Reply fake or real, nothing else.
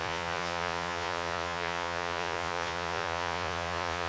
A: fake